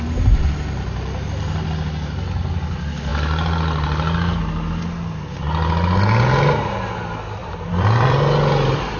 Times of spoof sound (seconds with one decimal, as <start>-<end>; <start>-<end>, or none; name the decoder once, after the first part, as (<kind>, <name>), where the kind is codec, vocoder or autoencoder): 7.4-9.0 (vocoder, BigVGAN v2)